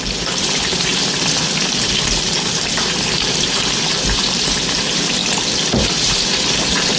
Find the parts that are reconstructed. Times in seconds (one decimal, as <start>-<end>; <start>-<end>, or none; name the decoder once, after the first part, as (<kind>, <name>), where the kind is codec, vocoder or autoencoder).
0.0-5.2 (vocoder, BigVGAN v2); 5.8-7.0